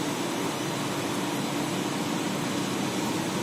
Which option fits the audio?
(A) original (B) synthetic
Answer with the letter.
A